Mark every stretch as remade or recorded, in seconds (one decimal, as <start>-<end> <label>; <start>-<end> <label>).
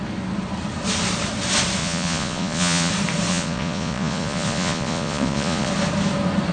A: 0.0-1.8 recorded; 1.8-2.9 remade; 2.9-3.3 recorded; 3.3-5.7 remade; 5.7-6.5 recorded